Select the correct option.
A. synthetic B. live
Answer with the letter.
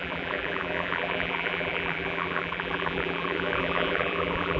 A